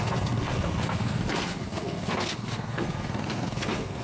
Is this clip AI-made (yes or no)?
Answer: yes